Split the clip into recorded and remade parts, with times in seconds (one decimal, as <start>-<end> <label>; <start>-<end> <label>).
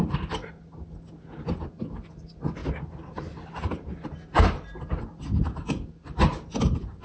0.0-7.0 recorded